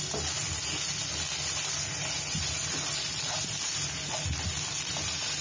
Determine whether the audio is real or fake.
real